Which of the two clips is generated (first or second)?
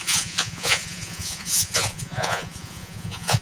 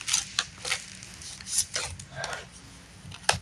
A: first